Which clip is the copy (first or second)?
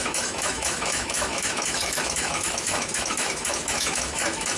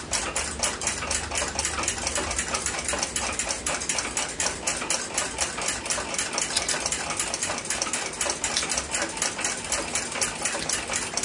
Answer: first